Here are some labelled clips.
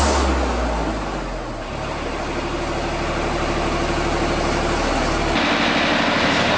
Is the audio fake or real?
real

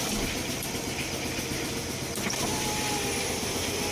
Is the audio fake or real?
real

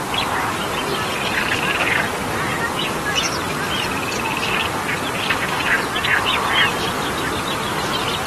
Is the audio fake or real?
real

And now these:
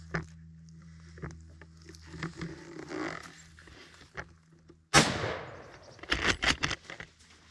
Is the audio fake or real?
real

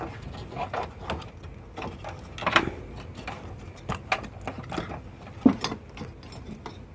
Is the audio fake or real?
real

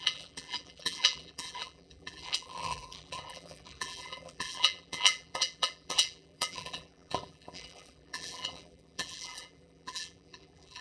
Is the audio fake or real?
fake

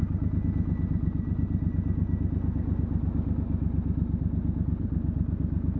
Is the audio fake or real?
real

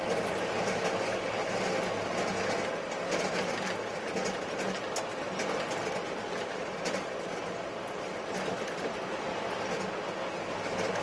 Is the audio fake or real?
real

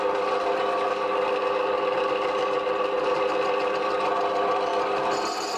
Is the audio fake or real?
fake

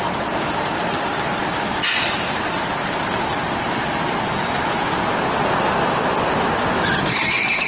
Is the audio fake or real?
fake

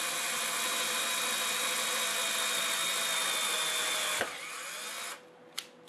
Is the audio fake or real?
real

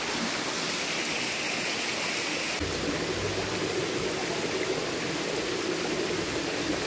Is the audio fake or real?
real